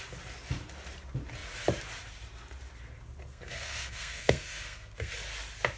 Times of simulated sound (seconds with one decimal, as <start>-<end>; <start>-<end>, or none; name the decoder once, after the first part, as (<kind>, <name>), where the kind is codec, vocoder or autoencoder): 3.3-5.1 (codec, SNAC)